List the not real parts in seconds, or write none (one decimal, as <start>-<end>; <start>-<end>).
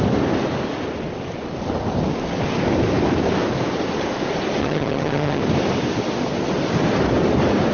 4.6-5.4